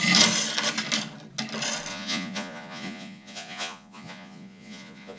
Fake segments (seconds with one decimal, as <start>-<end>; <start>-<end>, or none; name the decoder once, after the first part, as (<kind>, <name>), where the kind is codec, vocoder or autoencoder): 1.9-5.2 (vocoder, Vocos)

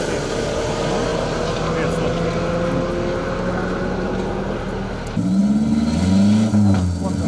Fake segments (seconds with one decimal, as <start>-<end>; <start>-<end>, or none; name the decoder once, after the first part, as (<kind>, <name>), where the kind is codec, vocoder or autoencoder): none

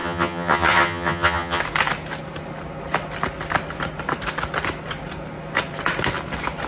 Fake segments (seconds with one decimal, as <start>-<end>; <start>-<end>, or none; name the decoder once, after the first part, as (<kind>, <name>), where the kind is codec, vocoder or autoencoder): 0.0-1.6 (vocoder, HiFi-GAN)

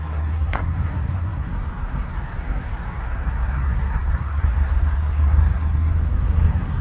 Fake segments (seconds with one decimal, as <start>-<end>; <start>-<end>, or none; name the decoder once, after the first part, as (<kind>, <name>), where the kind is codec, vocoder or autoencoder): 0.0-6.8 (codec, SNAC)

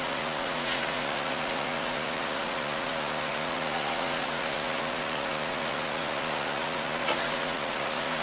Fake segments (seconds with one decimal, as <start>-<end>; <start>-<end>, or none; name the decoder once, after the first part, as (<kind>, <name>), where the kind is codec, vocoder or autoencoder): 0.0-8.2 (vocoder, Vocos)